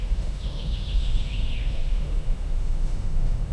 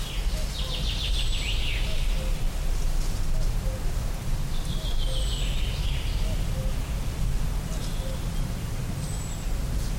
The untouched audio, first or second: second